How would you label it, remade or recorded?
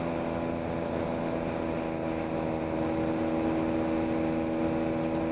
recorded